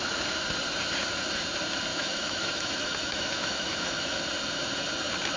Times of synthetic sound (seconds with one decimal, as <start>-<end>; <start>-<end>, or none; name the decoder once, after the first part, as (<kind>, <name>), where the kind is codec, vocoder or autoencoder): 1.9-4.2 (autoencoder, DAC-VAE)